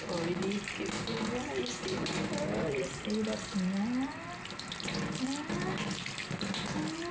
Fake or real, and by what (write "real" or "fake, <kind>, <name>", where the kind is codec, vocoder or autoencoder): real